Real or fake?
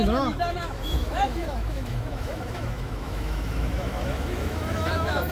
fake